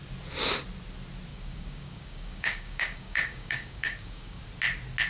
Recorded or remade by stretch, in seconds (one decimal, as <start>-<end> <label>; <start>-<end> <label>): 0.0-1.3 recorded; 1.3-4.4 remade; 4.4-5.1 recorded